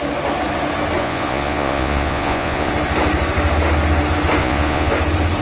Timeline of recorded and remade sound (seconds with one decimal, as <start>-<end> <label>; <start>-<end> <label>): 0.0-1.0 recorded; 1.0-2.7 remade; 2.7-4.4 recorded; 4.4-4.9 remade; 4.9-5.4 recorded